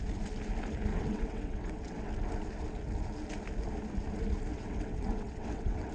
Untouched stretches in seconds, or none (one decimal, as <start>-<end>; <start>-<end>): 0.0-0.9; 2.1-4.5